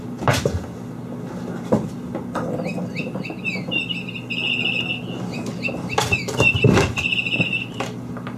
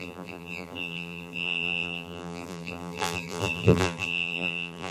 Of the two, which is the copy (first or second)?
second